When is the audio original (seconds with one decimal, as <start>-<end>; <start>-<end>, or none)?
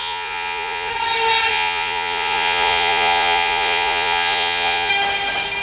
0.9-1.5; 4.9-5.6